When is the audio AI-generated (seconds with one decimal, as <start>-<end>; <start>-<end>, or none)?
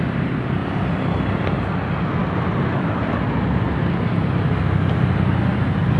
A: none